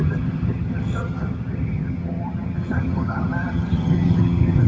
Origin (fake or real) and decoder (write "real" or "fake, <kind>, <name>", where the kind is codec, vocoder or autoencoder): fake, vocoder, HiFi-GAN